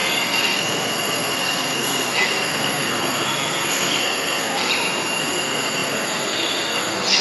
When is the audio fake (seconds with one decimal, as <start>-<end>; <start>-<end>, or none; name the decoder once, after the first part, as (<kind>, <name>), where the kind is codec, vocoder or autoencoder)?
0.0-4.7 (codec, SNAC); 5.2-7.2